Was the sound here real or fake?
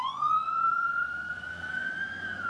fake